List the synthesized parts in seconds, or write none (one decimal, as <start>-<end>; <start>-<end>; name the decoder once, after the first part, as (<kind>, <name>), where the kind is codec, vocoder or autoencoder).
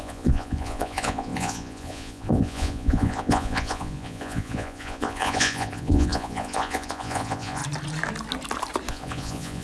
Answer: 0.0-7.6 (vocoder, Vocos); 8.9-9.6